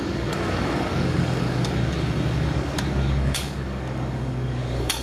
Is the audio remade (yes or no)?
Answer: yes